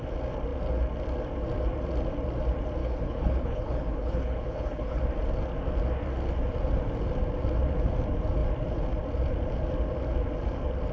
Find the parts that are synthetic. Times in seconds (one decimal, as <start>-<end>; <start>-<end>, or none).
2.8-5.0